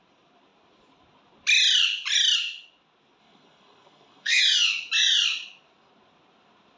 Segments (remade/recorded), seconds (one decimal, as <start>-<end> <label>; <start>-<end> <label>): 0.0-3.2 recorded; 3.2-4.4 remade; 4.4-6.8 recorded